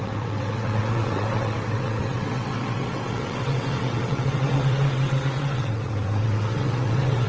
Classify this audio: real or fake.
fake